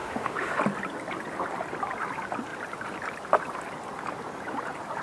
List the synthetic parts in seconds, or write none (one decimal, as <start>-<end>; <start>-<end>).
0.0-0.6